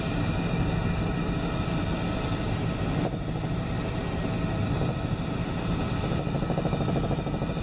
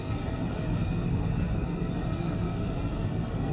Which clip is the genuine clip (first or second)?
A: first